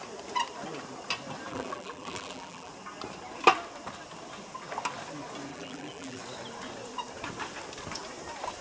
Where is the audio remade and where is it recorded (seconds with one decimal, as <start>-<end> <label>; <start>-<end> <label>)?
0.0-1.5 recorded; 1.5-2.7 remade; 2.7-5.5 recorded; 5.5-6.2 remade; 6.2-8.6 recorded